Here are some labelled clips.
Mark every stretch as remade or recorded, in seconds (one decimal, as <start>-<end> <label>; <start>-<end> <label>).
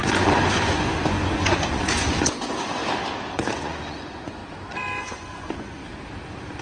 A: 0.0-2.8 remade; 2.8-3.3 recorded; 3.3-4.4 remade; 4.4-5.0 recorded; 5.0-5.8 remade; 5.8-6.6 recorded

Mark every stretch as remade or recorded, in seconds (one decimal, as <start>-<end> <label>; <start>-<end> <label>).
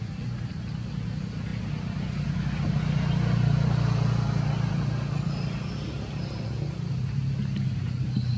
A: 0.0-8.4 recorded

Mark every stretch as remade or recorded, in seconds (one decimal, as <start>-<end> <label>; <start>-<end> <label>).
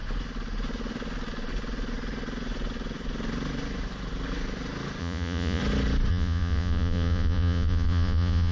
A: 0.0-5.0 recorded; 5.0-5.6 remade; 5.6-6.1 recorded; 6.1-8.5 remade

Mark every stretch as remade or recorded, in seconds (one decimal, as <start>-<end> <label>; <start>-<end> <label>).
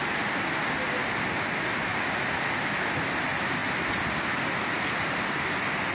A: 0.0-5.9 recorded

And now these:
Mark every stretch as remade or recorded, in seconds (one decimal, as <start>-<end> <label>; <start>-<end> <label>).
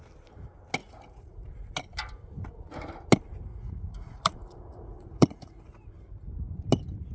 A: 0.0-0.8 recorded; 0.8-1.5 remade; 1.5-3.5 recorded; 3.5-5.9 remade; 5.9-7.1 recorded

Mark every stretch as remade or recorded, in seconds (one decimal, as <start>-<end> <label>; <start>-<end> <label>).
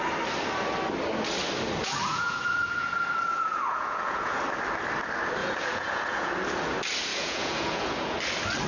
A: 0.0-1.8 recorded; 1.8-4.4 remade; 4.4-5.4 recorded; 5.4-6.3 remade; 6.3-7.1 recorded; 7.1-8.2 remade; 8.2-8.7 recorded